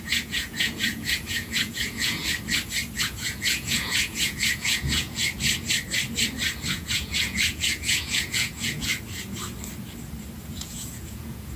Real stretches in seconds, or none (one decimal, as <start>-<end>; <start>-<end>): 2.2-3.0; 5.2-6.7; 8.9-10.4